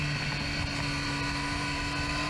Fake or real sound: real